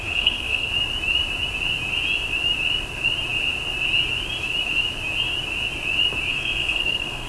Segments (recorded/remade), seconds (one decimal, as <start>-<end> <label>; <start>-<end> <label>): 0.0-0.7 remade; 0.7-6.3 recorded; 6.3-7.3 remade